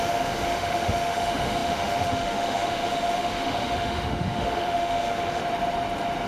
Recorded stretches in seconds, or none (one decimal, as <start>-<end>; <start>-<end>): 5.4-6.3